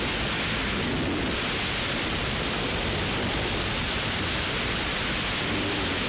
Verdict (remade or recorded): recorded